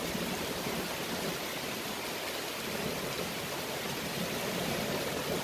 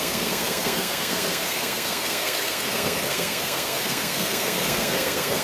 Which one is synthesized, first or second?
second